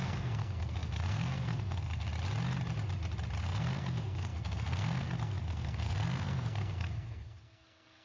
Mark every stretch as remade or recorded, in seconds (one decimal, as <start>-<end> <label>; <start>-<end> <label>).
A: 0.0-2.1 remade; 2.1-3.4 recorded; 3.4-8.0 remade